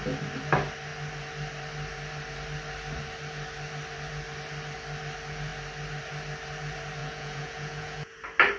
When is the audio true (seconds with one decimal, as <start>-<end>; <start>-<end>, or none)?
0.0-7.0; 8.2-8.6